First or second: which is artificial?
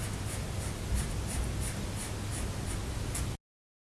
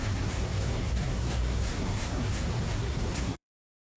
second